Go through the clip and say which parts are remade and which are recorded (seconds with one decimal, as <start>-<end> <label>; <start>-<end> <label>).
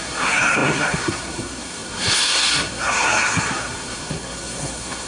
0.0-5.1 remade